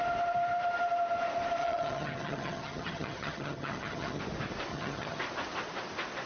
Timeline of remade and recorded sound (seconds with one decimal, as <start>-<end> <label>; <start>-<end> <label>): 0.0-1.6 recorded; 1.6-4.2 remade; 4.2-4.7 recorded; 4.7-5.2 remade; 5.2-6.3 recorded